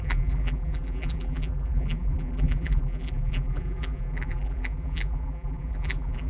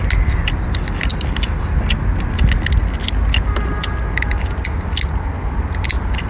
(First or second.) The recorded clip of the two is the second